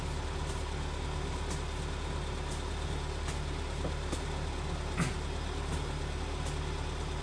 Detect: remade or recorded recorded